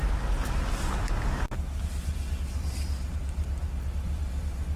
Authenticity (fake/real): real